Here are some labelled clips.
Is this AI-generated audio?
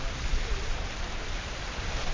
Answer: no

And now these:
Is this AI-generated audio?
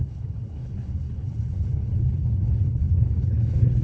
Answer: yes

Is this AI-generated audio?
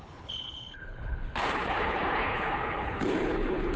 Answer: yes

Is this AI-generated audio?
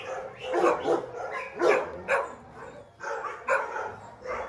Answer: no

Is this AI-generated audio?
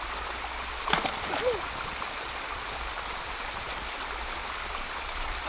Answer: no